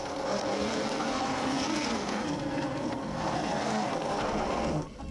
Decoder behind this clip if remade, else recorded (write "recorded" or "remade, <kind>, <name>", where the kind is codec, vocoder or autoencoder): remade, codec, SNAC